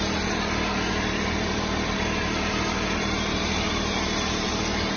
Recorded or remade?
remade